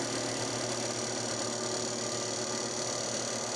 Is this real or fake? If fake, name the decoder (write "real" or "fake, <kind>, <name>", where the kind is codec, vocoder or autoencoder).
real